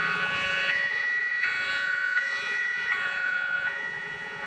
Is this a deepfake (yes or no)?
yes